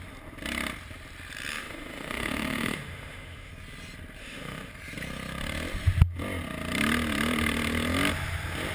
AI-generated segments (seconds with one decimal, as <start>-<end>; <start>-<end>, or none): 1.5-3.5; 4.2-4.7